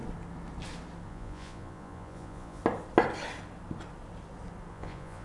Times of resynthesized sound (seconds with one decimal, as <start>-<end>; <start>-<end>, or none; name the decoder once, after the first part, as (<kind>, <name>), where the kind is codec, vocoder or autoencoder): 1.1-2.6 (vocoder, Vocos); 4.7-5.2